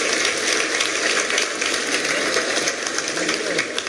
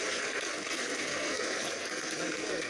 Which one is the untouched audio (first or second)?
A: first